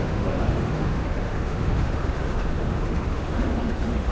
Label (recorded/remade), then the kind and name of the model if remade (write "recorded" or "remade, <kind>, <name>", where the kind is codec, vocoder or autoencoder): remade, autoencoder, DAC-VAE